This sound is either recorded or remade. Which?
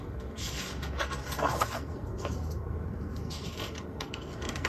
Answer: remade